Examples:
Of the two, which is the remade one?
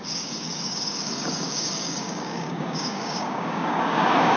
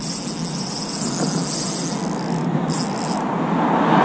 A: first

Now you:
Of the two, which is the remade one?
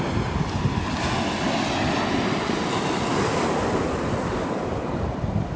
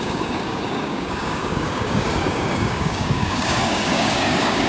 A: second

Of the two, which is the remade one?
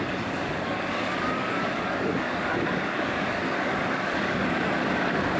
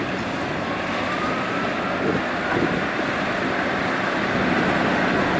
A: first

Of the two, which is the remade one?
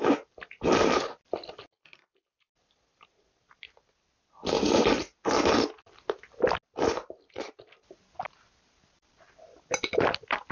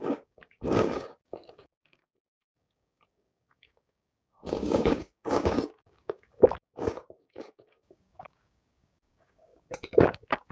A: second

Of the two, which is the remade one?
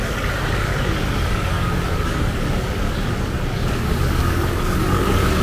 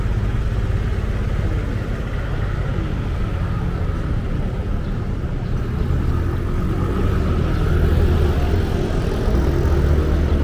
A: first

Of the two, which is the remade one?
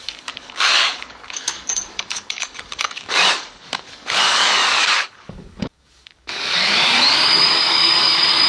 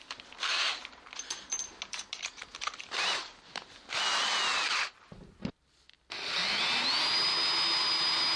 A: first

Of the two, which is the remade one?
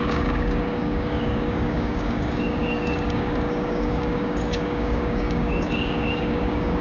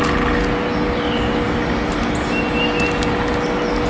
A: first